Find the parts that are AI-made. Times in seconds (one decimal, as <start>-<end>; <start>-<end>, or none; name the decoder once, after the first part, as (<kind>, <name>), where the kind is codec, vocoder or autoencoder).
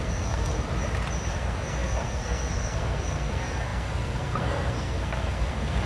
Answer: 0.0-0.5 (codec, SNAC); 1.3-5.9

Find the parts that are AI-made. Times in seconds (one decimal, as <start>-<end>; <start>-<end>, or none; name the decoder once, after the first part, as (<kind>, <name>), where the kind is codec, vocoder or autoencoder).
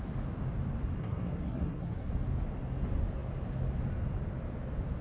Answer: 1.0-2.1 (codec, SNAC)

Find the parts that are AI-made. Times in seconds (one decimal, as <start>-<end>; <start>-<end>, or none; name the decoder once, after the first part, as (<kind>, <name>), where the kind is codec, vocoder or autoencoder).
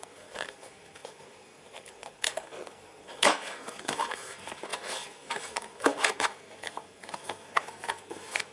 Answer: 0.0-8.5 (codec, SNAC)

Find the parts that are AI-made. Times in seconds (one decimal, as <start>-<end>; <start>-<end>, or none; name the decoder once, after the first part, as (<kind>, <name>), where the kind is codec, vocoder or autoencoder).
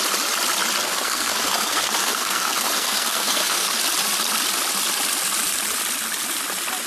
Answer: 0.8-3.7 (codec, SNAC)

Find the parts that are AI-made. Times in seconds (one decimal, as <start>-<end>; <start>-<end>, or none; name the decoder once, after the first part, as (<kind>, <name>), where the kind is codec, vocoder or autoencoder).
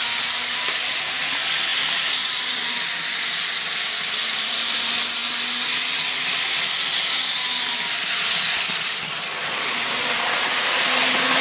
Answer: none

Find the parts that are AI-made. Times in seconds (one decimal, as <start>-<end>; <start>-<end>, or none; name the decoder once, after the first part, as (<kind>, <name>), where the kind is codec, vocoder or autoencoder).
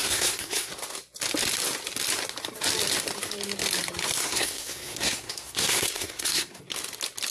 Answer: 0.0-0.7 (codec, SNAC); 4.2-6.6